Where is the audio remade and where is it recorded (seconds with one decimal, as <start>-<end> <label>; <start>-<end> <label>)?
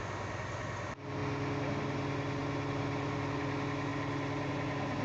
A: 0.0-5.0 recorded